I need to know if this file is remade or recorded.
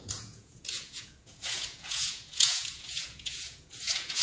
remade